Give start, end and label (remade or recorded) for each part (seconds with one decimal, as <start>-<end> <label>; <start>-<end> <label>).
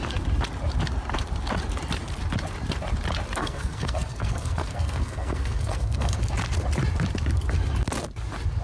0.0-3.4 recorded; 3.4-6.2 remade; 6.2-8.6 recorded